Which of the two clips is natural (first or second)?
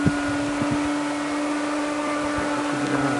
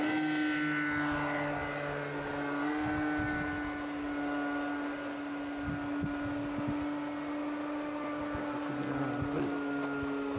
second